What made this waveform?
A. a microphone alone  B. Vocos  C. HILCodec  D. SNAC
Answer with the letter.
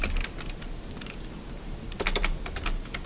A